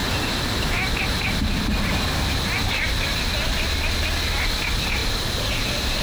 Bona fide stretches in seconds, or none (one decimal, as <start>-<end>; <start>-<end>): 2.9-6.0